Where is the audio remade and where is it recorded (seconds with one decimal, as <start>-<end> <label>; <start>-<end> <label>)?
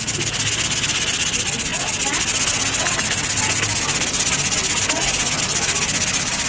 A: 0.0-6.5 recorded